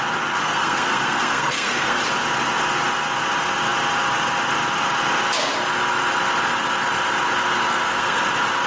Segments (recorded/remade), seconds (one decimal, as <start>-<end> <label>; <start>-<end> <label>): 0.0-0.4 recorded; 0.4-2.0 remade; 2.0-7.7 recorded; 7.7-8.2 remade; 8.2-8.7 recorded